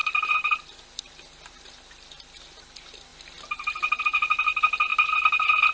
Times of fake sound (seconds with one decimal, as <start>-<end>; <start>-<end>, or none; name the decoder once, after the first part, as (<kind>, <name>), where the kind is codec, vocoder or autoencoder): 0.0-3.1 (vocoder, BigVGAN v2); 4.0-5.7